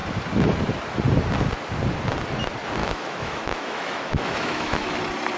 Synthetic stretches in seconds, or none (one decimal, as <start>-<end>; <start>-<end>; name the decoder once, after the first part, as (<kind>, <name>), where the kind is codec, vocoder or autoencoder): 2.8-5.0 (autoencoder, DAC-VAE)